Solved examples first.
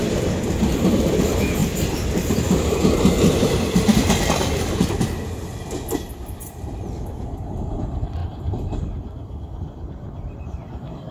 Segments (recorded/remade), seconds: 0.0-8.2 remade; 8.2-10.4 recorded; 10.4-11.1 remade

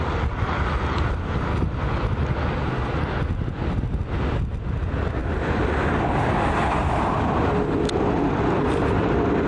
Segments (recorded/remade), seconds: 0.0-9.5 recorded

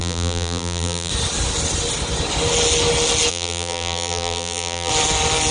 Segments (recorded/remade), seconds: 0.0-1.1 remade; 1.1-3.3 recorded; 3.3-4.9 remade; 4.9-5.5 recorded

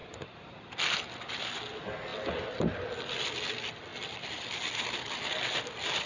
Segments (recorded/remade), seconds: 0.0-1.4 remade; 1.4-3.9 recorded; 3.9-5.2 remade; 5.2-6.1 recorded

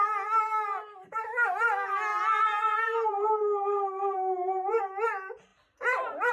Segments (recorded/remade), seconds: 0.0-2.1 recorded; 2.1-4.8 remade; 4.8-5.5 recorded; 5.5-6.3 remade

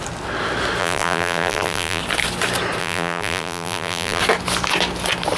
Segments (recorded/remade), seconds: 0.0-0.8 recorded; 0.8-2.0 remade; 2.0-2.8 recorded; 2.8-4.2 remade; 4.2-5.4 recorded

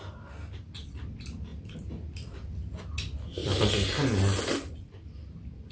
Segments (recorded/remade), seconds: 0.0-5.7 recorded